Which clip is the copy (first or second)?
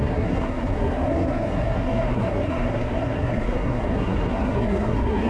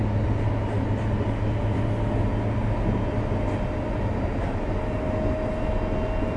first